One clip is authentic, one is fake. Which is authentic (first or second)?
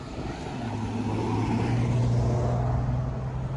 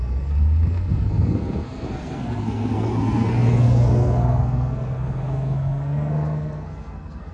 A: first